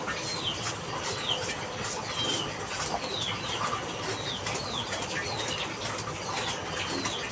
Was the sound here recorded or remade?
recorded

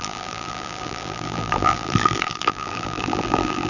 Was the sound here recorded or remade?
remade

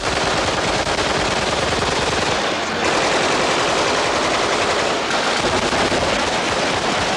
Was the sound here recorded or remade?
recorded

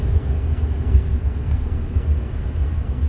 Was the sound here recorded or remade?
remade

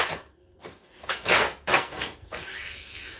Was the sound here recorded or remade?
remade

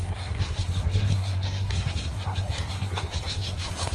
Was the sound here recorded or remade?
remade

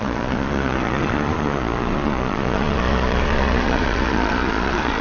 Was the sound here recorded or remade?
remade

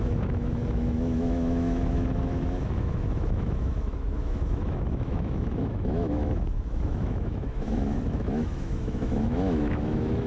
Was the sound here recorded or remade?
remade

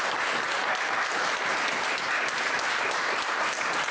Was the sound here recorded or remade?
recorded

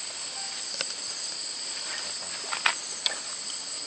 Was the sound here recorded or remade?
recorded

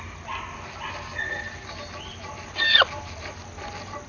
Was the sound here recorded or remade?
recorded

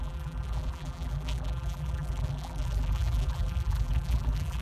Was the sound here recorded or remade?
remade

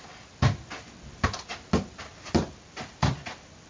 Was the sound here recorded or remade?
recorded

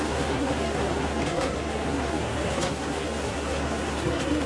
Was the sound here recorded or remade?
remade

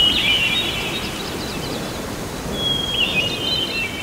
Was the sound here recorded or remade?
recorded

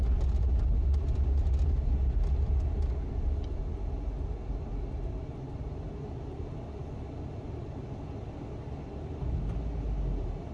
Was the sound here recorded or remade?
recorded